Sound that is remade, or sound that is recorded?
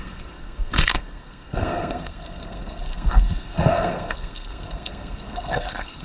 remade